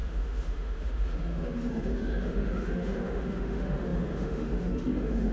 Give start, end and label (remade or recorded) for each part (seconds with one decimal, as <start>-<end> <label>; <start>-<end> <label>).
0.0-5.3 remade